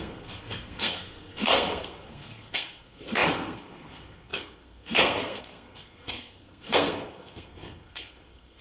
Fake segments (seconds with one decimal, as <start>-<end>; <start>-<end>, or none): 0.0-8.6